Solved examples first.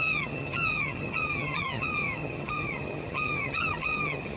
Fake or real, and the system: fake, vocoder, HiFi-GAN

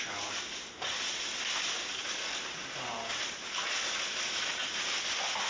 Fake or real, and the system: real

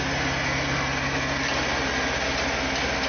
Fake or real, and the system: real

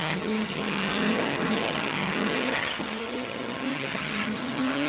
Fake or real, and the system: fake, vocoder, HiFi-GAN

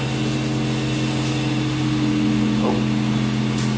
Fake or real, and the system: real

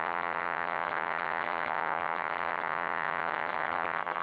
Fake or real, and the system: fake, vocoder, HiFi-GAN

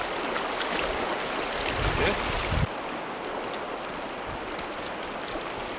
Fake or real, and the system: real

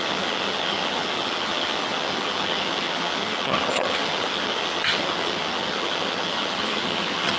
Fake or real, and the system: fake, vocoder, HiFi-GAN